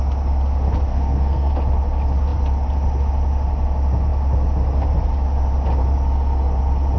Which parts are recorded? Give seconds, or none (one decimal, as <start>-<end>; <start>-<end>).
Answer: 0.0-0.9; 1.5-7.0